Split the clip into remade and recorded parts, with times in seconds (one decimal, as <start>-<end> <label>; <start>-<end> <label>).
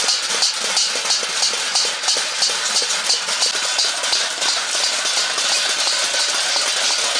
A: 0.0-7.2 recorded